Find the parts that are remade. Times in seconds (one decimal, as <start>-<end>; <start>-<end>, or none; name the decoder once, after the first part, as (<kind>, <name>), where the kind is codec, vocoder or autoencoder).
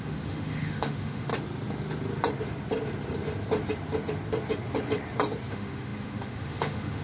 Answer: 0.0-1.3 (autoencoder, DAC-VAE); 5.5-7.0